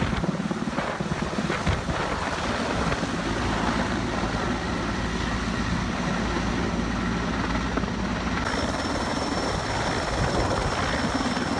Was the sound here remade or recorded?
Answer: recorded